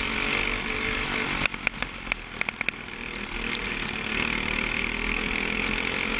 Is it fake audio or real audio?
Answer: real